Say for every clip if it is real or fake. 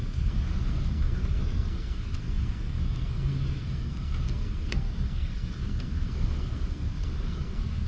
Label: fake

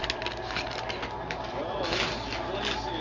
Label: real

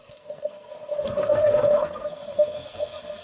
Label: fake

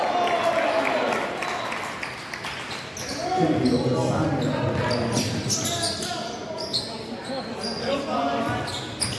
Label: real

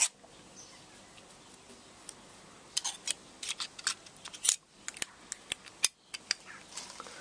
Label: real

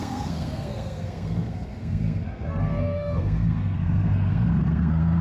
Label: fake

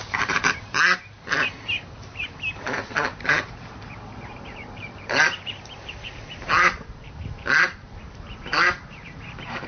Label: fake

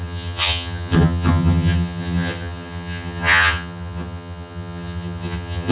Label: fake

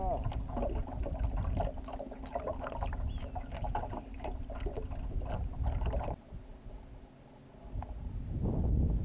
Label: real